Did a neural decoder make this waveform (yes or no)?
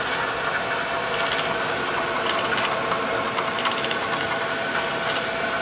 no